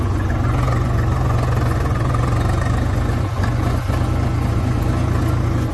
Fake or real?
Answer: fake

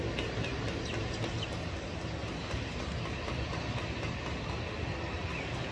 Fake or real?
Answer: real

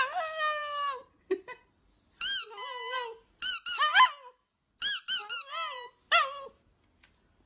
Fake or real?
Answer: real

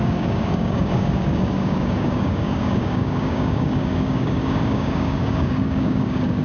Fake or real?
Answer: fake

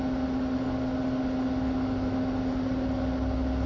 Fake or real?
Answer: real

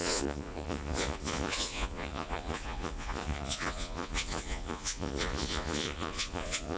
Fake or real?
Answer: fake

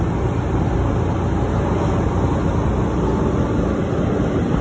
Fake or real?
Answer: real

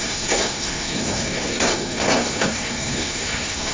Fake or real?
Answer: fake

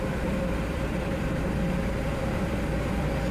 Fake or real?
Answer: fake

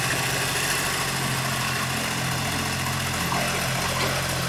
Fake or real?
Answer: real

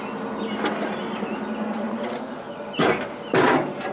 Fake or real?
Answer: real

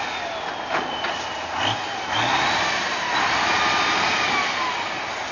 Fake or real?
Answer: real